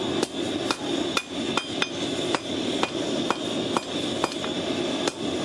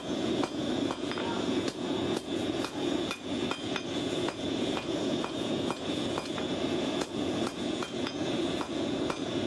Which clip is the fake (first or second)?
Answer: second